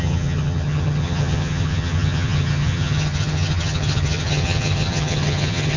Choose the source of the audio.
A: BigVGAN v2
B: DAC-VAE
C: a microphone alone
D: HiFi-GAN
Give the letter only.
D